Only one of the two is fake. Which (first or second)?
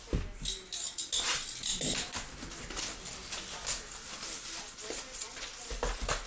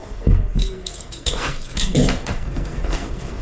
second